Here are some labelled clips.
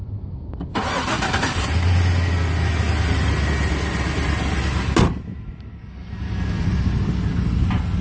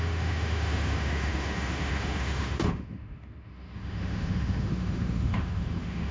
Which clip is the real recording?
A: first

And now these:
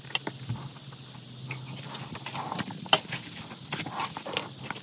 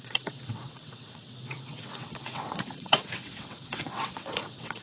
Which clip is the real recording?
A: first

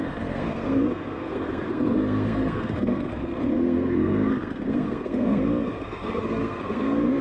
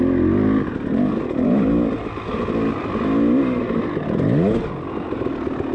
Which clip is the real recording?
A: second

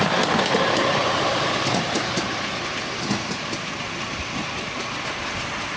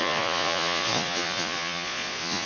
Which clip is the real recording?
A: first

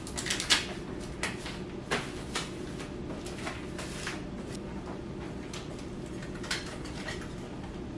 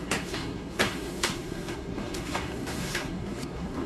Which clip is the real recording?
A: first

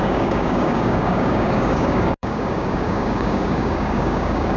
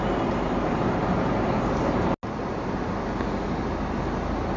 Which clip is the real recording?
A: second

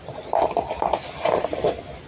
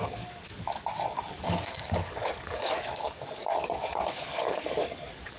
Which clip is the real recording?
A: first